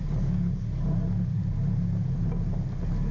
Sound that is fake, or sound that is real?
real